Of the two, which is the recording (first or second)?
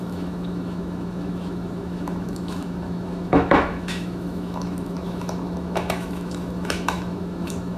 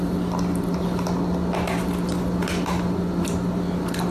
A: second